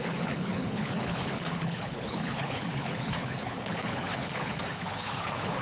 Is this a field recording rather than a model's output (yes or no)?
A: no